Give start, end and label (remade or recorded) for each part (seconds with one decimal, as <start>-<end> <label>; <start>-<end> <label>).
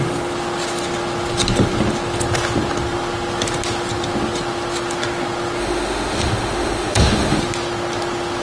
0.0-5.6 recorded; 5.6-7.4 remade; 7.4-8.4 recorded